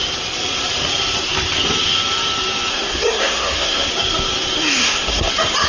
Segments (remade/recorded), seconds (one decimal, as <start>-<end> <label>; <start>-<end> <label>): 0.0-2.7 recorded; 2.7-3.9 remade; 3.9-4.8 recorded; 4.8-5.3 remade; 5.3-5.7 recorded

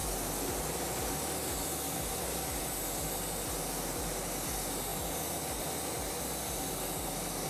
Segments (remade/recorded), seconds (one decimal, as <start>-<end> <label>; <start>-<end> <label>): 0.0-7.5 recorded

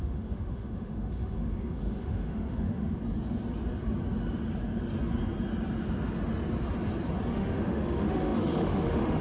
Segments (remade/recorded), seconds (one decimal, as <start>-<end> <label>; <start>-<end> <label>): 0.0-3.0 remade; 3.0-7.3 recorded; 7.3-9.2 remade

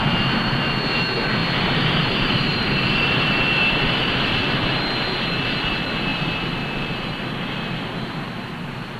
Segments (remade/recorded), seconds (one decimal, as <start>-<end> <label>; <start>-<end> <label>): 0.0-1.4 recorded; 1.4-4.7 remade; 4.7-9.0 recorded

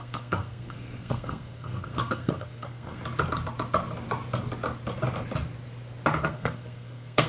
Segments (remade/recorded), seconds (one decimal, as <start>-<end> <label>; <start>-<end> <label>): 0.0-3.0 remade; 3.0-6.3 recorded; 6.3-7.3 remade

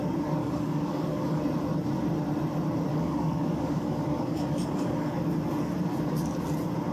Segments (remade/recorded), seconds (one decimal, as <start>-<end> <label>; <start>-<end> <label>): 0.0-0.4 recorded; 0.4-1.4 remade; 1.4-2.9 recorded; 2.9-5.2 remade; 5.2-6.9 recorded

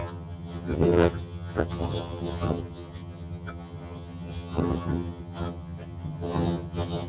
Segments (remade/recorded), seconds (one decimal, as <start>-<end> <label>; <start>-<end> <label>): 0.0-7.1 remade

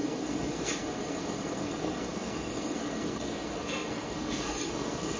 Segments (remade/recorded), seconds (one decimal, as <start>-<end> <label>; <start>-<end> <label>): 0.0-5.2 remade